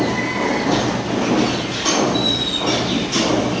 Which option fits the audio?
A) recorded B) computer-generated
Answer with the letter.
A